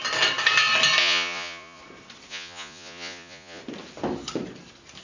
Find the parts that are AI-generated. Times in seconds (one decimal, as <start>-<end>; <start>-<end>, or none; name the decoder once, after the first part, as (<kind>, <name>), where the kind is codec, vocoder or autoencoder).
1.0-1.8 (vocoder, Vocos); 2.3-3.6